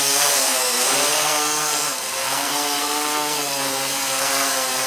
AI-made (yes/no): yes